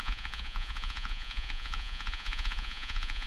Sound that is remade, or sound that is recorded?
remade